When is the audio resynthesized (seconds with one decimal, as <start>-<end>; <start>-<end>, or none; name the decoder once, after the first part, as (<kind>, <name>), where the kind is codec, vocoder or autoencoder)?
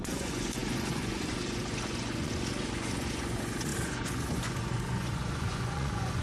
0.0-6.2 (vocoder, Vocos)